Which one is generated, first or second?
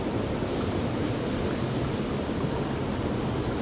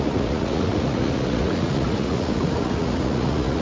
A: second